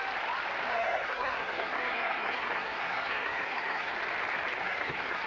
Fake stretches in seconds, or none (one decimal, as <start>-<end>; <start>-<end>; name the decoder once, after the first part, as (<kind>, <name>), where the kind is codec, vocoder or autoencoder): 0.7-3.9 (codec, SNAC); 4.6-5.3